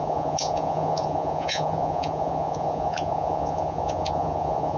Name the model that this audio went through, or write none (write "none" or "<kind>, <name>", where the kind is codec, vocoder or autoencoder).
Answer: vocoder, Vocos